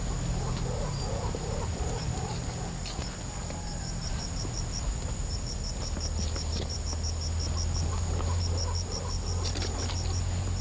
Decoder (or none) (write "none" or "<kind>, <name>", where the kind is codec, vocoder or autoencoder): none